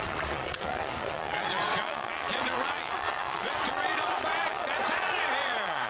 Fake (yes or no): yes